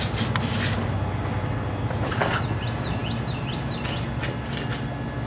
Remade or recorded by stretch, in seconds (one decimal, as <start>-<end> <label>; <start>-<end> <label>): 0.0-5.3 recorded